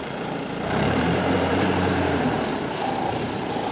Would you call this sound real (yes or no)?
no